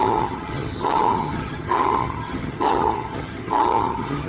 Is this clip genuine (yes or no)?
no